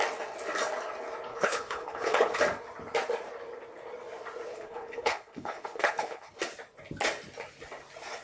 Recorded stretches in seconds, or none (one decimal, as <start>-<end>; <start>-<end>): 0.0-1.3; 2.4-4.5; 6.4-8.2